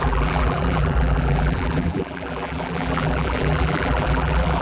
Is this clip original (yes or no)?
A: no